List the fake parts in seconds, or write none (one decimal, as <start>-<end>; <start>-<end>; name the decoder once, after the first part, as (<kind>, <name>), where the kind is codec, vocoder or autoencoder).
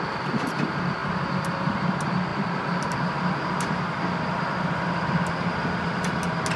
none